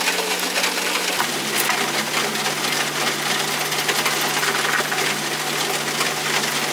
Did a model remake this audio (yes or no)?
no